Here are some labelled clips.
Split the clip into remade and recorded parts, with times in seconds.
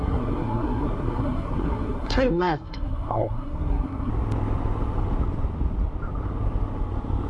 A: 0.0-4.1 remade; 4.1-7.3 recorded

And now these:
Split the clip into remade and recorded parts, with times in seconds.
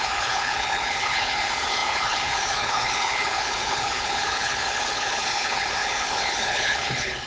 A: 0.0-7.3 remade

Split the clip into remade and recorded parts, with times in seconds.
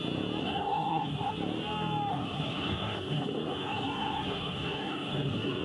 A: 0.0-0.4 recorded; 0.4-1.3 remade; 1.3-2.1 recorded; 2.1-5.6 remade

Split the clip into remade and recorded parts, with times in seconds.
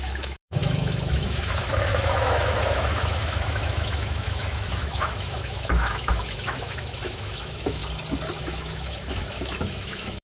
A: 0.0-7.8 remade; 7.8-8.4 recorded; 8.4-10.2 remade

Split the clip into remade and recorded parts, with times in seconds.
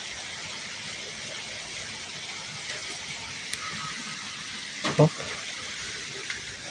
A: 0.0-2.8 recorded; 2.8-6.7 remade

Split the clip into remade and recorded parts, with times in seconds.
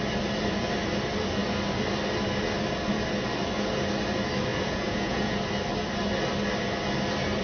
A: 0.0-4.5 recorded; 4.5-5.3 remade; 5.3-7.4 recorded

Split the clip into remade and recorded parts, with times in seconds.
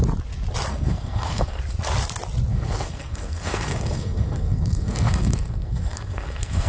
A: 0.0-0.7 recorded; 0.7-1.6 remade; 1.6-2.5 recorded; 2.5-6.7 remade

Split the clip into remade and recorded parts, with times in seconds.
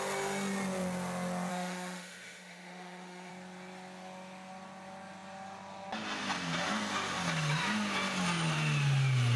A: 0.0-1.5 recorded; 1.5-3.3 remade; 3.3-9.4 recorded